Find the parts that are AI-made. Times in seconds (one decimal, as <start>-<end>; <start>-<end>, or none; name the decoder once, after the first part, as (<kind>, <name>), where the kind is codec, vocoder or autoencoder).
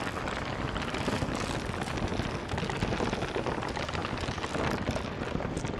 none